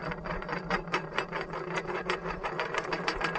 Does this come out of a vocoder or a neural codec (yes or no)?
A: yes